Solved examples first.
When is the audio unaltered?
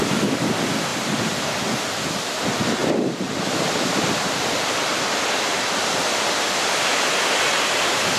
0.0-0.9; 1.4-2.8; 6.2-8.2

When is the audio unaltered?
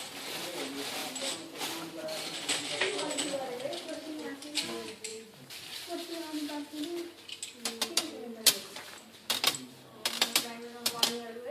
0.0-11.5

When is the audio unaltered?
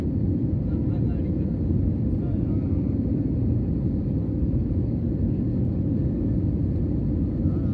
0.0-4.2; 5.1-5.5; 6.3-7.7